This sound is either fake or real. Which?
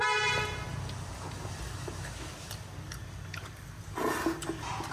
real